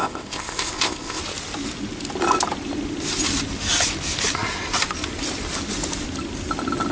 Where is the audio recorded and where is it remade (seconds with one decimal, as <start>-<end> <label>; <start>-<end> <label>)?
0.0-1.2 remade; 1.2-6.9 recorded